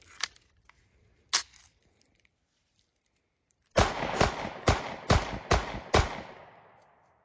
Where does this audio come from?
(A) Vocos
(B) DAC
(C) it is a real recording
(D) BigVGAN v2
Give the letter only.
C